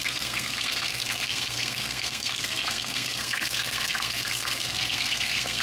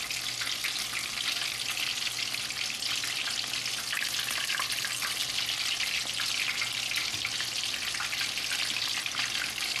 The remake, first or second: first